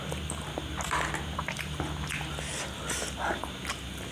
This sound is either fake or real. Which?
real